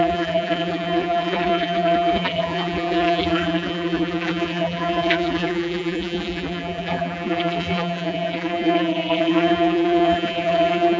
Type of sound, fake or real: fake